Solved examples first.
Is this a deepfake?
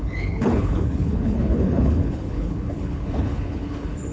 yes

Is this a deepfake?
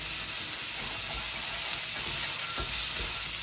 no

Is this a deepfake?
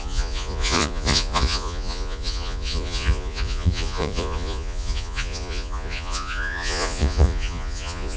yes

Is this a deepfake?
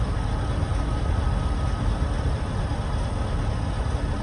no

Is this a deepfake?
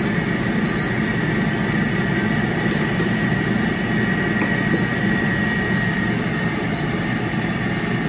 no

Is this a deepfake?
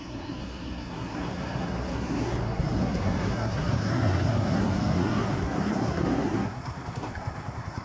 yes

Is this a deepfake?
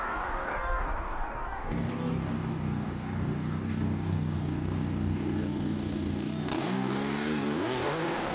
yes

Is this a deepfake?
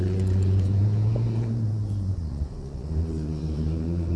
yes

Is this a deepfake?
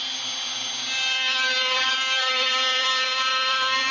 yes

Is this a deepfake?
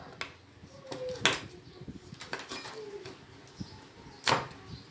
no